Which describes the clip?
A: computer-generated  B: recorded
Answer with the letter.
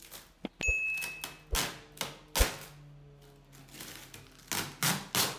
B